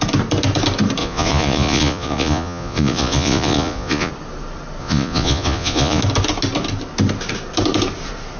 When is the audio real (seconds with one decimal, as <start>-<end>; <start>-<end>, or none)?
0.0-1.0; 4.1-4.8; 6.0-8.4